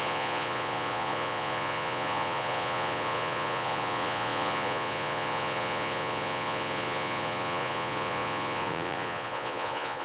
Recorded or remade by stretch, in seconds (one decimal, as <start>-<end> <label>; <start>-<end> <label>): 0.0-10.0 remade